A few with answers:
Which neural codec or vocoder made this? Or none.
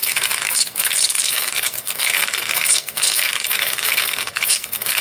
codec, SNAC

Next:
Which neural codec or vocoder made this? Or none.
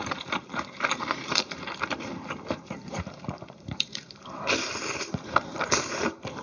vocoder, BigVGAN v2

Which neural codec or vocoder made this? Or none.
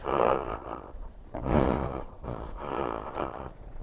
vocoder, Vocos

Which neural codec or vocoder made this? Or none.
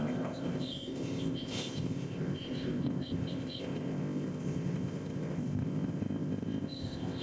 codec, ZipCodec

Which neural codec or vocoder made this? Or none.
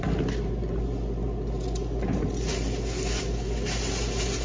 none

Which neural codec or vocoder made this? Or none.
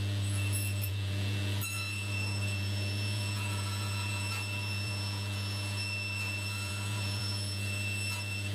vocoder, Vocos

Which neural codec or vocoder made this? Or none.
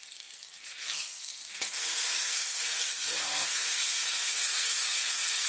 codec, SNAC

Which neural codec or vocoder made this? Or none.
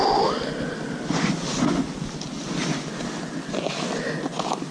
none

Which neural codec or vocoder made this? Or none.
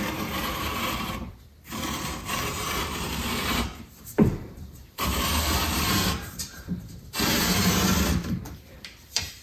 vocoder, BigVGAN v2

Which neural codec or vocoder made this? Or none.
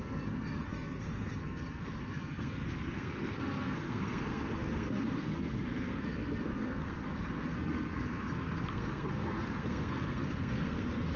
codec, SNAC